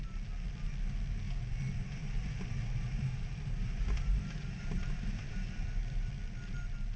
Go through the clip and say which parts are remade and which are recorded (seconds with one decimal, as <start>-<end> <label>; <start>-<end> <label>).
0.0-2.0 recorded; 2.0-6.1 remade; 6.1-7.0 recorded